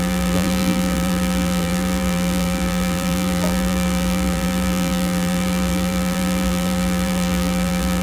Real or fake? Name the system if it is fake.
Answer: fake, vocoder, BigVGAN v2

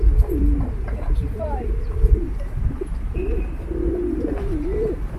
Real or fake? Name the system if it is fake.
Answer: fake, vocoder, BigVGAN v2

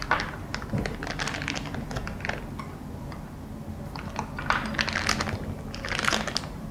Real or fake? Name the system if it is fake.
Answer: real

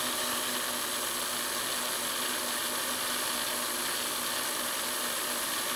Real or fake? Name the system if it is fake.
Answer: real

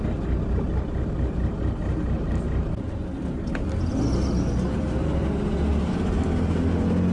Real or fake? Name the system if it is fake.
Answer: real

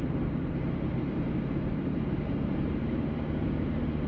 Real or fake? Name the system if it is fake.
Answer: fake, vocoder, BigVGAN v2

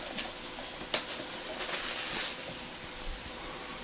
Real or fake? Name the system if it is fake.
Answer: real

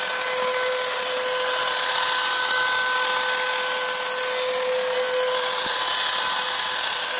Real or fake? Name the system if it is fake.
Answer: real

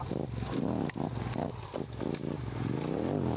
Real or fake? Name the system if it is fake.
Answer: real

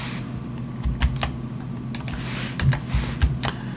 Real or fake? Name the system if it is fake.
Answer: real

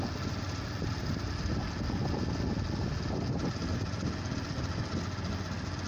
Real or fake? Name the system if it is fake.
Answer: real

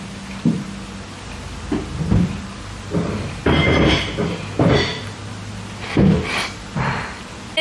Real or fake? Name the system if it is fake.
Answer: real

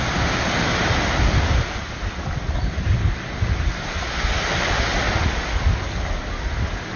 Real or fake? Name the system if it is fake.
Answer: real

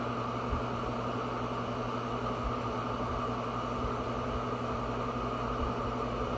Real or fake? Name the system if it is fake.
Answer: real